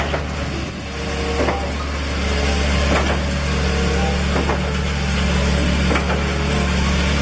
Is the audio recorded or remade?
recorded